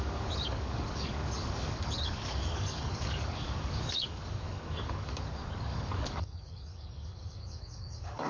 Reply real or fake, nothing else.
fake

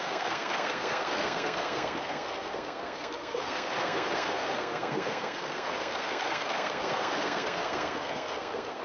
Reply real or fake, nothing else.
fake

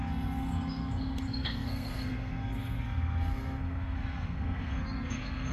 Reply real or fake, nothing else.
fake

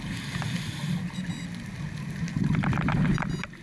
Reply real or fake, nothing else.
real